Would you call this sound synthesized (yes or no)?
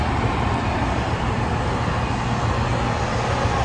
no